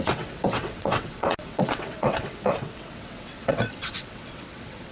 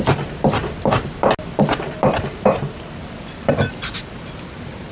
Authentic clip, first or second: second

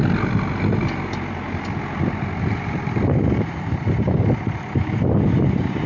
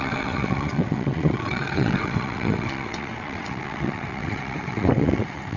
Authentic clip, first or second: first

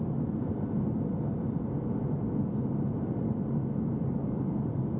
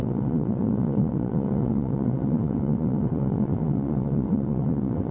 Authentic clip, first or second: first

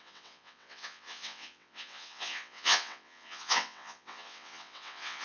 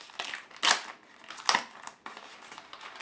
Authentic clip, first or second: second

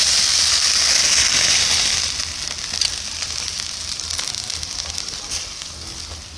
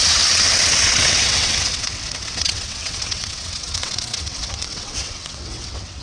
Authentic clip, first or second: first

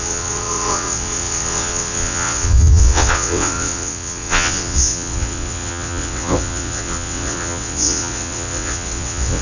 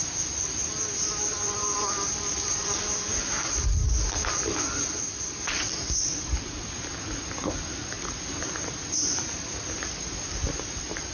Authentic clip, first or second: second